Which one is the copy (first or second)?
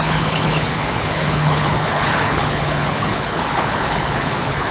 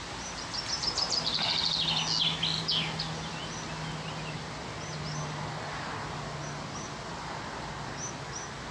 first